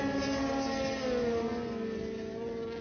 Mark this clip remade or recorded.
recorded